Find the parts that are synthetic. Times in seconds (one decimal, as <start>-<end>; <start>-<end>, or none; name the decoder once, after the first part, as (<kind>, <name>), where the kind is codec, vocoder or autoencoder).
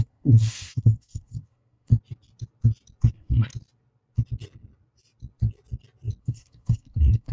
0.0-1.9 (codec, SNAC); 3.1-3.5; 6.2-7.3